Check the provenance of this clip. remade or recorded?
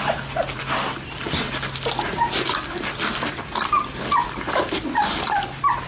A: remade